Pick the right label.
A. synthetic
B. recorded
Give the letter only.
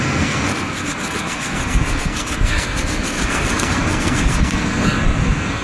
A